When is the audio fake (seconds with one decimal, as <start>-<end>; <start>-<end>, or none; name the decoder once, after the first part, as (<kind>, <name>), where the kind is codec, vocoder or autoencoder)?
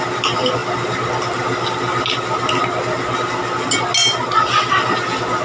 none